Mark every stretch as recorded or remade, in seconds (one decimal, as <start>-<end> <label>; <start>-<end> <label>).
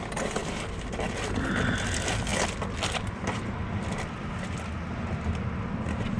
0.0-6.2 recorded